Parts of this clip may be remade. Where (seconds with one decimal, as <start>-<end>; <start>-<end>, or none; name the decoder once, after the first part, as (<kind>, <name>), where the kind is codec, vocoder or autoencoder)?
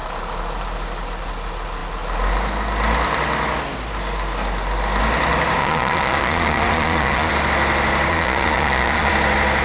5.6-7.3 (vocoder, Vocos); 8.1-9.1